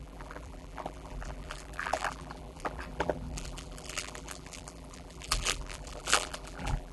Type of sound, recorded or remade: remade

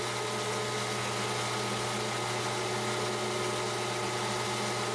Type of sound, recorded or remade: recorded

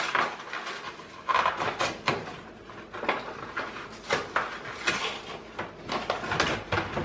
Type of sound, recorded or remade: recorded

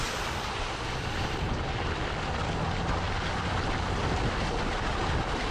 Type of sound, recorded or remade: remade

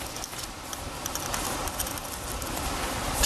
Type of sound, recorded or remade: recorded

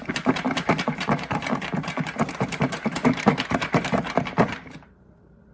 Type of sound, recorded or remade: remade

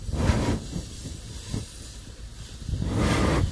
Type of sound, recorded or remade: recorded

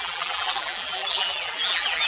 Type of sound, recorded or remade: remade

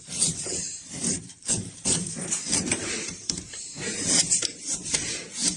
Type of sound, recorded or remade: remade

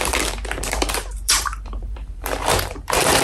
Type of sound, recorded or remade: remade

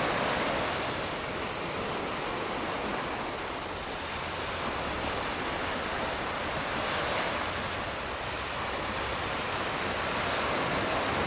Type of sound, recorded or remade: recorded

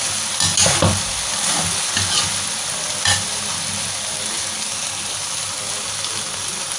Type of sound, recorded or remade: recorded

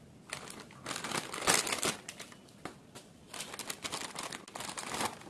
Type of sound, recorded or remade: recorded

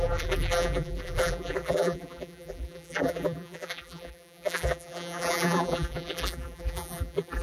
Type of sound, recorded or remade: remade